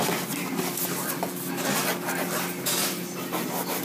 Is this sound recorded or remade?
recorded